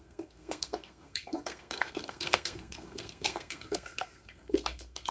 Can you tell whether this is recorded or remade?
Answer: remade